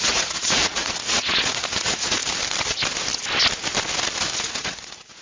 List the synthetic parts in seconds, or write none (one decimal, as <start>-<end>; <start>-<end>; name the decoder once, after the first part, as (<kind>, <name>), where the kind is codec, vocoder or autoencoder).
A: 0.0-2.2 (vocoder, Vocos); 4.4-5.2